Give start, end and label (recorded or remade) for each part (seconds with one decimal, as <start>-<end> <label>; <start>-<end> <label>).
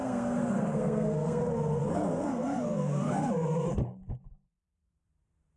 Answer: 0.0-1.4 remade; 1.4-1.8 recorded; 1.8-3.3 remade; 3.3-5.6 recorded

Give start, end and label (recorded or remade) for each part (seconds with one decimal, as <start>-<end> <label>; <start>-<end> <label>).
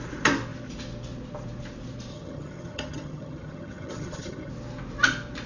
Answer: 0.0-2.1 recorded; 2.1-4.5 remade; 4.5-5.5 recorded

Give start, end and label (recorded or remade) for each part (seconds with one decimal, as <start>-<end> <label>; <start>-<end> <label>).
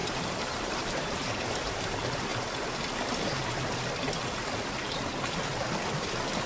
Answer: 0.0-1.8 remade; 1.8-6.5 recorded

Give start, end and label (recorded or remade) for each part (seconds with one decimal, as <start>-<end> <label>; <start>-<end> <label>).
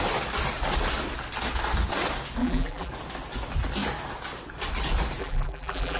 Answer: 0.0-2.4 recorded; 2.4-2.9 remade; 2.9-5.2 recorded; 5.2-6.0 remade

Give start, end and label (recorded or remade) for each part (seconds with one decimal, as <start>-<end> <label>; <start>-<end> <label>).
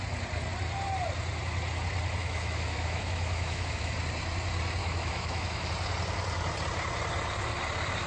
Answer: 0.0-2.2 recorded; 2.2-3.9 remade; 3.9-4.8 recorded; 4.8-5.7 remade; 5.7-8.1 recorded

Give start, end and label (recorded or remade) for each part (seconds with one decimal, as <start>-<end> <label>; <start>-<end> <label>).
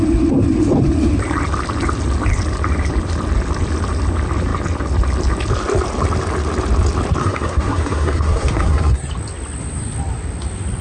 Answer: 0.0-7.2 recorded; 7.2-9.1 remade; 9.1-10.8 recorded